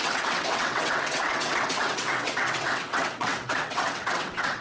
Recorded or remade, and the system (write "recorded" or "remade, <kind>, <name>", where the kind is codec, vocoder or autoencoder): remade, vocoder, WaveNeXt